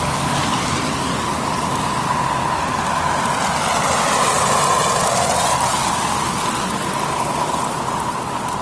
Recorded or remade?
recorded